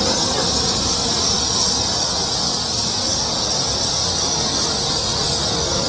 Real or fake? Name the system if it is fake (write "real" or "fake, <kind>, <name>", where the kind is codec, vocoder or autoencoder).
real